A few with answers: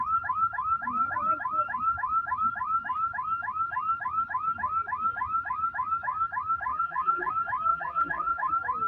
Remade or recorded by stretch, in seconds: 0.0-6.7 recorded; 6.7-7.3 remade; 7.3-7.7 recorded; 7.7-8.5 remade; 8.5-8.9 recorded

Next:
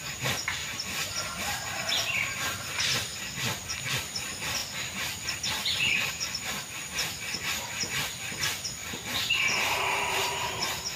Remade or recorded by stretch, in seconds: 0.0-4.6 recorded; 4.6-6.1 remade; 6.1-11.0 recorded

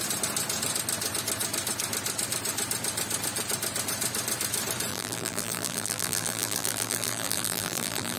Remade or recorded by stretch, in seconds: 0.0-4.9 recorded; 4.9-8.2 remade

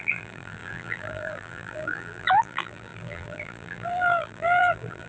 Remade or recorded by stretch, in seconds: 0.0-5.1 remade

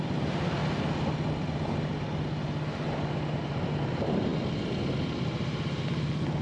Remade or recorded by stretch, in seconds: 0.0-0.6 remade; 0.6-3.4 recorded; 3.4-6.4 remade

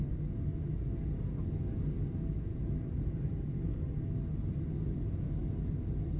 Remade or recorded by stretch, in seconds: 0.0-2.5 recorded; 2.5-4.0 remade; 4.0-6.2 recorded

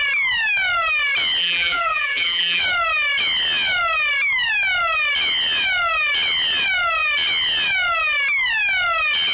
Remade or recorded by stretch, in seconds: 0.0-1.4 recorded; 1.4-2.6 remade; 2.6-9.3 recorded

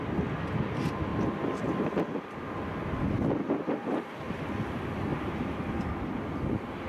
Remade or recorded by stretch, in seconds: 0.0-5.1 recorded; 5.1-5.6 remade; 5.6-6.9 recorded